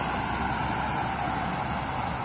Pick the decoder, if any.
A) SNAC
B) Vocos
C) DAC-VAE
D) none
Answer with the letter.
D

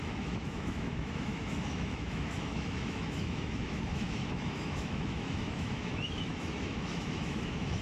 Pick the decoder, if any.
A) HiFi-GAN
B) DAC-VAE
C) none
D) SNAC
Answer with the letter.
B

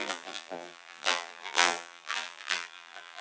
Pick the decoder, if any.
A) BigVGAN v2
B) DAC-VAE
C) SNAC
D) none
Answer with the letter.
A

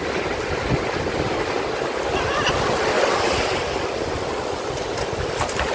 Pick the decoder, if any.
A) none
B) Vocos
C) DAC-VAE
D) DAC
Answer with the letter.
A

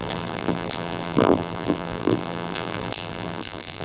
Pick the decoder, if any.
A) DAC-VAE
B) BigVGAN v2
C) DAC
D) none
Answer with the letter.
B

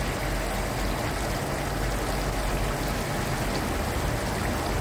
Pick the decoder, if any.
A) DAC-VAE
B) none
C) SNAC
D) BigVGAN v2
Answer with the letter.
B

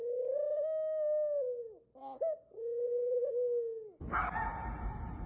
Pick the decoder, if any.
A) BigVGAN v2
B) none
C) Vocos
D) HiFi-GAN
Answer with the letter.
B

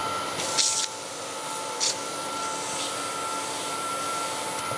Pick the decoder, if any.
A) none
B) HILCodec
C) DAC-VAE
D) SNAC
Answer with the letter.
A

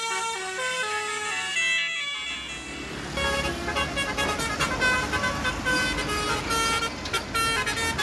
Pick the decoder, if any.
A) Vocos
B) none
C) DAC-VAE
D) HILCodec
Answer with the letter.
B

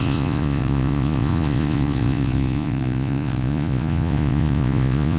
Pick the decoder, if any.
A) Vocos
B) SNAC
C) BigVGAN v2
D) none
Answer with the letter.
A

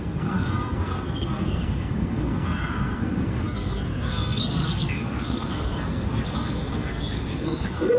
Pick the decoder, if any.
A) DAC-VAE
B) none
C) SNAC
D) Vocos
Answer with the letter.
C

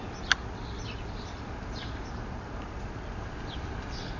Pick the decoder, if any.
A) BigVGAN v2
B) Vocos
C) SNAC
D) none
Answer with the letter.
D